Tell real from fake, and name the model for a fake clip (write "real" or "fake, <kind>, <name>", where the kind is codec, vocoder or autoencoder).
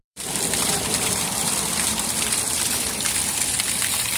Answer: fake, vocoder, BigVGAN v2